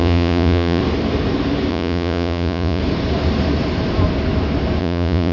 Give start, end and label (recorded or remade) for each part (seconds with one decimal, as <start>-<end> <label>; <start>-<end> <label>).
0.0-0.8 remade; 0.8-1.7 recorded; 1.7-2.8 remade; 2.8-4.8 recorded; 4.8-5.3 remade